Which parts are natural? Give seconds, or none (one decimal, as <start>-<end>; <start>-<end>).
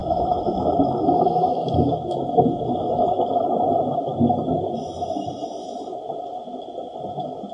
3.5-7.5